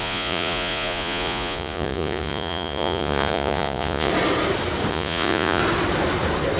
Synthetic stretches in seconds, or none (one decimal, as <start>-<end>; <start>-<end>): 0.0-4.1; 4.9-5.6